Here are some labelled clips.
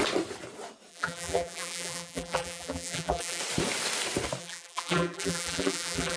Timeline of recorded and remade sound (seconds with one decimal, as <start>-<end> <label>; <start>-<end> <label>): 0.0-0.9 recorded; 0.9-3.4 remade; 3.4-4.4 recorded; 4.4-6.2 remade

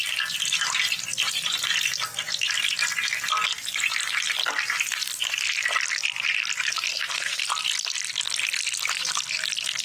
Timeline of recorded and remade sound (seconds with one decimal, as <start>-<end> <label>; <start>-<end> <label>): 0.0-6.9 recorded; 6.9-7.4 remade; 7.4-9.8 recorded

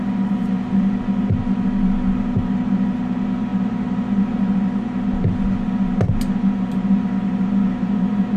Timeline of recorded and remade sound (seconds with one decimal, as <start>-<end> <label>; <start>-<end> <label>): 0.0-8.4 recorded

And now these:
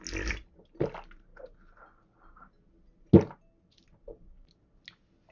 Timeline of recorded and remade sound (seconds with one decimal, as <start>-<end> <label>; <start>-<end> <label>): 0.0-5.3 recorded

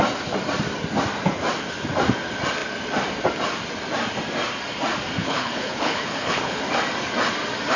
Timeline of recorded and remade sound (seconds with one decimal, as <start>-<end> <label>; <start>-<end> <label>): 0.0-5.2 recorded; 5.2-6.6 remade; 6.6-7.8 recorded

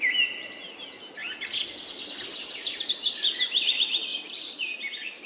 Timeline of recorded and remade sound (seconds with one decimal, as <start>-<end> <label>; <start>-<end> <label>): 0.0-5.3 recorded

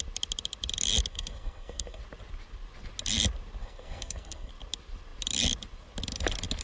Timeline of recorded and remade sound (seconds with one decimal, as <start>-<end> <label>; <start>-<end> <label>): 0.0-1.1 recorded; 1.1-2.0 remade; 2.0-3.6 recorded; 3.6-4.5 remade; 4.5-6.6 recorded